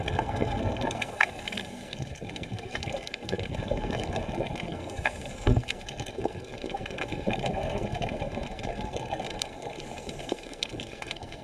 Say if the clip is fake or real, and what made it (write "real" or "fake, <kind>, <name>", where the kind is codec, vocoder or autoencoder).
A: fake, codec, SNAC